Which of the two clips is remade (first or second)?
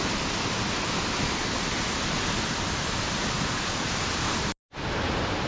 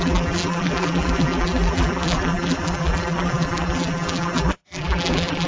second